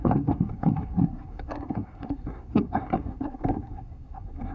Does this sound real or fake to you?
fake